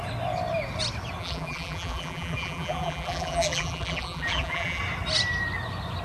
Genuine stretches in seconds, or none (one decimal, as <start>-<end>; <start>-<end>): 0.0-1.2; 4.8-6.0